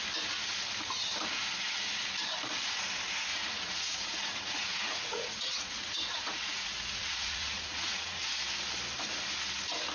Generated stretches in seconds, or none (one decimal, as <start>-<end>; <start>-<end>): 3.3-8.2

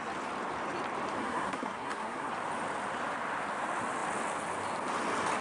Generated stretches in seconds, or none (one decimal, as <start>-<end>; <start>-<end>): 1.2-2.3

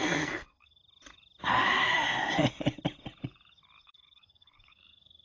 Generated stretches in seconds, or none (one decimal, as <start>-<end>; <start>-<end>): 0.0-0.8; 3.8-5.2

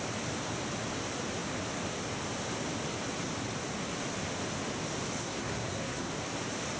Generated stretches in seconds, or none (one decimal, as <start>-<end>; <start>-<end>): 5.2-6.1